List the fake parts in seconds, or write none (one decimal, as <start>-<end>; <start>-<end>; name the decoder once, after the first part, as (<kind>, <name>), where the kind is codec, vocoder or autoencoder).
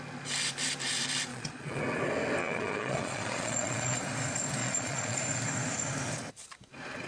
1.3-1.8 (vocoder, Vocos); 2.4-4.0; 4.6-5.2